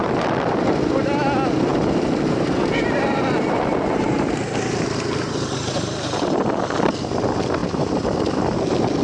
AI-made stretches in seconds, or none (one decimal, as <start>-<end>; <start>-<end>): 0.0-0.6; 1.7-6.6; 7.6-8.1